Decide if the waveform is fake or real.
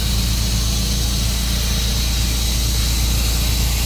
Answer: real